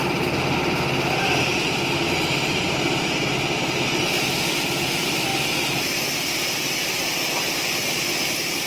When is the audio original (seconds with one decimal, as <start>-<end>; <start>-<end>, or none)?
0.0-8.7